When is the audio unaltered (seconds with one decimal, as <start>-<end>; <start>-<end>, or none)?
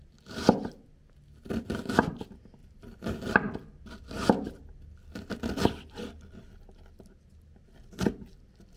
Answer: 0.0-2.6; 3.4-8.8